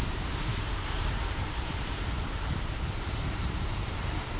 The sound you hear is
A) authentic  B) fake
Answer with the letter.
B